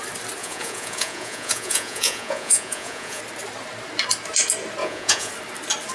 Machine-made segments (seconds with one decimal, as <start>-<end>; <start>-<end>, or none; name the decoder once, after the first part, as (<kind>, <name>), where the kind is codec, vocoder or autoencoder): 0.4-3.2 (vocoder, Vocos); 4.8-5.3